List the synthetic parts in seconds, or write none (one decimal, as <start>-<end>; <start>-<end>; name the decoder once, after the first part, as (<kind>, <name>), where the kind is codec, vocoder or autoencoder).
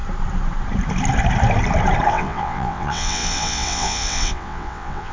2.1-5.1 (vocoder, WaveNeXt)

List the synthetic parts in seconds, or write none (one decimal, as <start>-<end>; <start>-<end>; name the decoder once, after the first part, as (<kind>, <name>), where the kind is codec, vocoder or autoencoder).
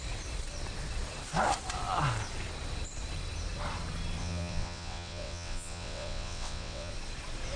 4.2-6.9 (vocoder, WaveNeXt)